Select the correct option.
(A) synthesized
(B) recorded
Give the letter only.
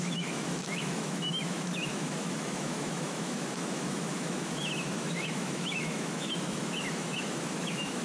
A